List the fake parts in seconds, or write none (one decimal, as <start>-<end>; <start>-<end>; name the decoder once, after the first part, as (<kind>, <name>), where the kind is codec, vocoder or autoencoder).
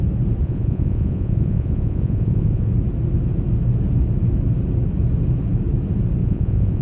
0.4-2.7 (vocoder, Vocos); 6.2-6.8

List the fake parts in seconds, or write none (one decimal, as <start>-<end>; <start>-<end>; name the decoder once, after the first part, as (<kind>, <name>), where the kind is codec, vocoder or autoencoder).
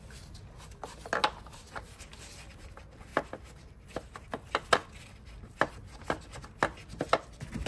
none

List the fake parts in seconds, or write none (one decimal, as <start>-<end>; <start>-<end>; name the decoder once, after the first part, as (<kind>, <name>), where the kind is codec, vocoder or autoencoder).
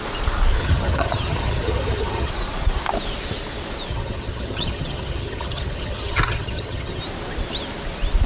0.6-2.3 (vocoder, HiFi-GAN); 3.9-7.0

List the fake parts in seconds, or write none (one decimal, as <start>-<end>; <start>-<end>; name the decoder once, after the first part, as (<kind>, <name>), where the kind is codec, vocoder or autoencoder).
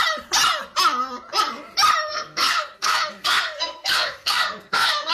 2.1-5.1 (codec, SNAC)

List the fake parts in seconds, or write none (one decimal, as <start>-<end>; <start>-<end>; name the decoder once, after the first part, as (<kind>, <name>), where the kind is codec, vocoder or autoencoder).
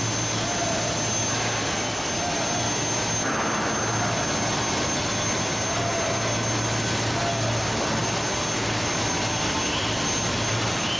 none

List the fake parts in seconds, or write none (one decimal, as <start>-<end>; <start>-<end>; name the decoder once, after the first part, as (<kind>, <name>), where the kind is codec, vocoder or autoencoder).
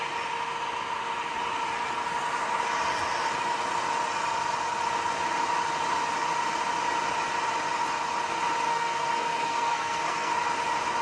8.7-10.3 (codec, SNAC)